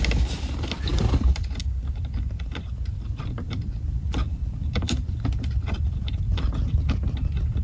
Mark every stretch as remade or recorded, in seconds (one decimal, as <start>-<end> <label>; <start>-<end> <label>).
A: 0.0-0.9 recorded; 0.9-1.6 remade; 1.6-2.0 recorded; 2.0-6.5 remade; 6.5-7.6 recorded